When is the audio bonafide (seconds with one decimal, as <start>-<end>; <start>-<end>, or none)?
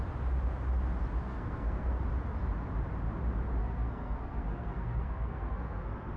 0.0-1.2; 2.0-3.6